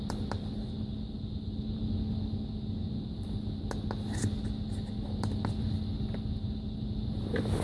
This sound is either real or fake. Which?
real